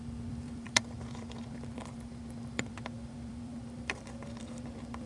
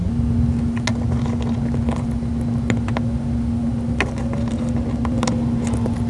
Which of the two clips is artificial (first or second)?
first